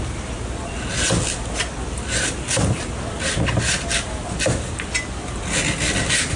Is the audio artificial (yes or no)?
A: no